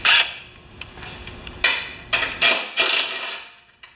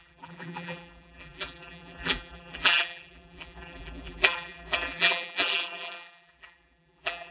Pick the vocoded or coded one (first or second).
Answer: second